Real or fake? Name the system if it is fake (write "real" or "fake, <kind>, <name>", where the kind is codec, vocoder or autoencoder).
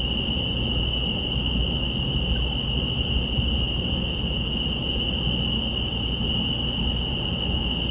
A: real